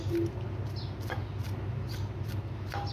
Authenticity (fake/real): real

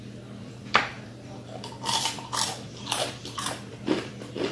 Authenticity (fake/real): fake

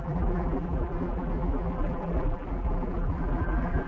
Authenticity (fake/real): fake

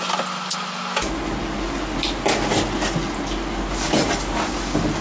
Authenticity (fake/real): real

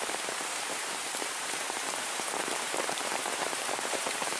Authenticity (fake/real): fake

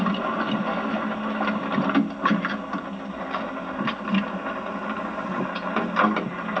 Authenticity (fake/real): real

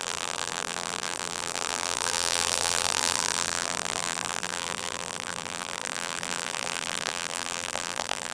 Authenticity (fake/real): fake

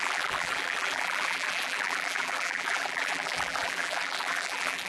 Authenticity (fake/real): fake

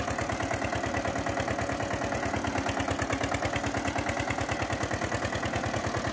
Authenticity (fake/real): real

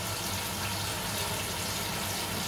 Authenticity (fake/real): real